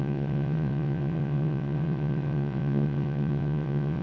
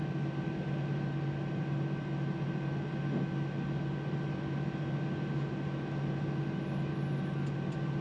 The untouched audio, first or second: second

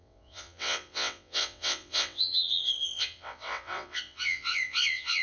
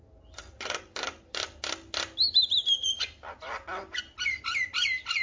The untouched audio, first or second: second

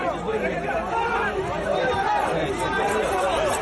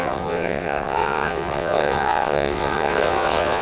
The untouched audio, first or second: first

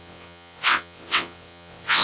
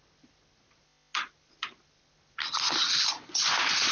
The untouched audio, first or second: second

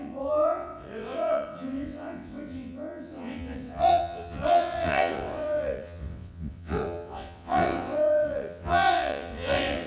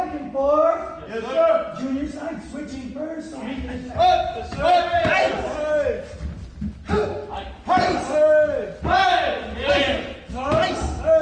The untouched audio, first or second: second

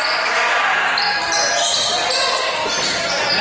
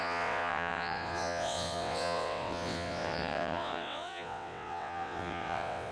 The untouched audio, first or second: first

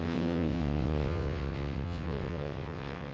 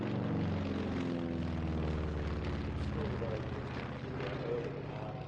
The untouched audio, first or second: second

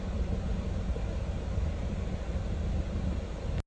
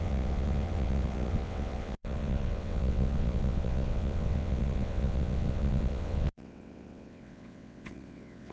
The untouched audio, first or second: first